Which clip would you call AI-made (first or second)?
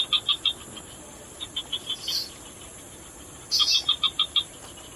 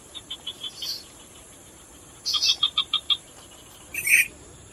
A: second